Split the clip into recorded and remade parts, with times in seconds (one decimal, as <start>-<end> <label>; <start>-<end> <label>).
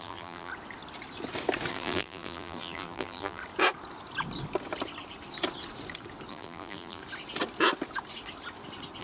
0.0-0.5 remade; 0.5-1.7 recorded; 1.7-3.4 remade; 3.4-6.3 recorded; 6.3-7.0 remade; 7.0-9.0 recorded